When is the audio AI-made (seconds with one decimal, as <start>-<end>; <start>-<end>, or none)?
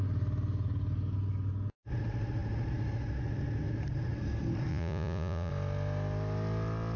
4.7-5.5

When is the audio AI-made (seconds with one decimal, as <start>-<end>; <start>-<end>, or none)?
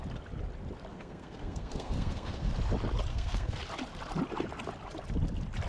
0.9-2.5; 3.1-3.6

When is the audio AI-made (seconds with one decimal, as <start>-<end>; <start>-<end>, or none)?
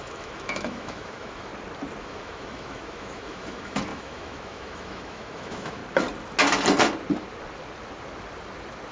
0.0-1.5; 2.0-5.8